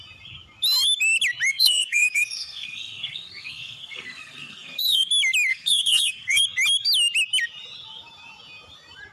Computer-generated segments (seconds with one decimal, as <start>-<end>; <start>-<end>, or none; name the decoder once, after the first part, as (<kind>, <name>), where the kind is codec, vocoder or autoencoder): 1.5-5.1 (codec, SNAC); 5.5-6.4

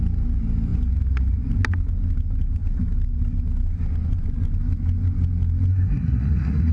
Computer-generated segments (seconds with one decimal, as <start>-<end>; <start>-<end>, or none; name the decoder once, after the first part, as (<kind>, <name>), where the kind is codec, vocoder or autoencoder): 5.7-6.7 (codec, SNAC)

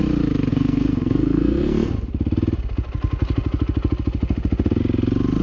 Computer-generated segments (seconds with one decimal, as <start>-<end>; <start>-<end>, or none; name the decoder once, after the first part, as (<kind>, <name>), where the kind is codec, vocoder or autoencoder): 0.5-1.9 (codec, SNAC)

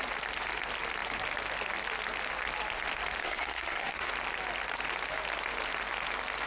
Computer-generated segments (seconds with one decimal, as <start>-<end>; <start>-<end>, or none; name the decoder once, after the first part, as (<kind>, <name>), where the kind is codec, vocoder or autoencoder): 3.2-4.1 (codec, SNAC)

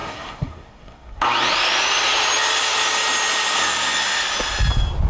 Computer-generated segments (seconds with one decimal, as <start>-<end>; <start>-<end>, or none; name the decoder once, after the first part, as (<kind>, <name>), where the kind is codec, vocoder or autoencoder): 0.0-1.2 (codec, SNAC)

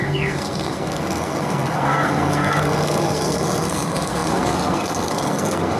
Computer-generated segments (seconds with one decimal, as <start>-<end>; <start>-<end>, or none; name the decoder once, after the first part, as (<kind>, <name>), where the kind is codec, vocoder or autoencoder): 0.0-5.8 (codec, SNAC)

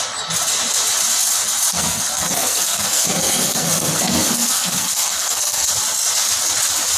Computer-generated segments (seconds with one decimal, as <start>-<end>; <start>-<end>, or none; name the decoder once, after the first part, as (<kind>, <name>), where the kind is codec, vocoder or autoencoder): 1.7-5.7 (codec, SNAC)

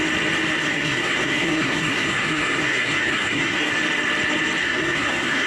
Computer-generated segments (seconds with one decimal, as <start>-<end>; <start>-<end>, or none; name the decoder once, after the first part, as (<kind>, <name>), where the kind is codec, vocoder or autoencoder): 0.6-3.7 (codec, SNAC); 4.6-5.5